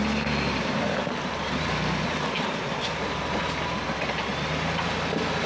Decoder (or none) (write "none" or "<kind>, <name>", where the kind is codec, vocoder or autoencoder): none